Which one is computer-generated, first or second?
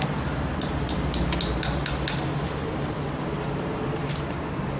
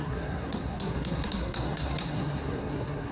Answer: second